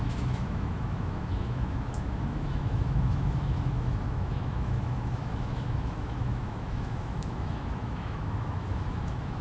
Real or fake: fake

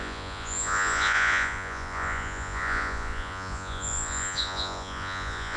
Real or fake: fake